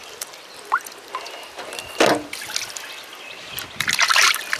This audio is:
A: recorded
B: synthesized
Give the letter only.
B